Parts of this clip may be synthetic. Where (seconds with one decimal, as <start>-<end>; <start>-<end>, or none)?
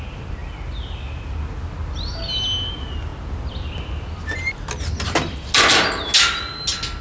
none